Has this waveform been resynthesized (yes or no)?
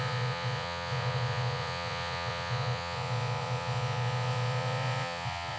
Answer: yes